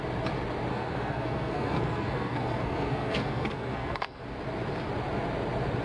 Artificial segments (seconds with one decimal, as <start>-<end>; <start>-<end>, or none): 0.7-4.2